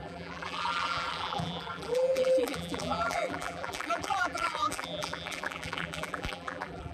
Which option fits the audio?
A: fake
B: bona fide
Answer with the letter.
A